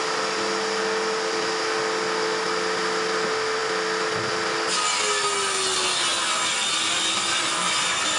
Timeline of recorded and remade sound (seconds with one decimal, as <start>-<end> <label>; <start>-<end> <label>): 0.0-8.2 recorded